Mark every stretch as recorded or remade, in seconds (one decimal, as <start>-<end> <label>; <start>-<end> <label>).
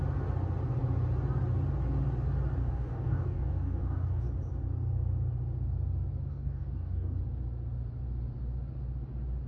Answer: 0.0-2.6 recorded; 2.6-4.3 remade; 4.3-6.3 recorded; 6.3-7.2 remade; 7.2-9.5 recorded